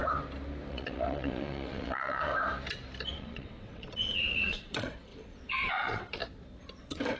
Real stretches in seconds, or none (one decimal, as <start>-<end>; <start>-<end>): 0.0-0.7; 2.3-3.1; 6.2-6.8